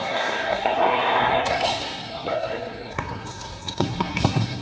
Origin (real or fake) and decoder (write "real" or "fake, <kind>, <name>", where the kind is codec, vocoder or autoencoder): fake, codec, SNAC